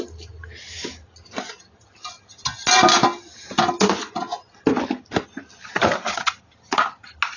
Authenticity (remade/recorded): recorded